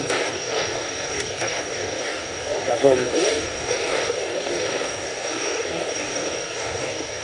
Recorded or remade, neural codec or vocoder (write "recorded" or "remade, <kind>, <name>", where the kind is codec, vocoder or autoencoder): remade, codec, DAC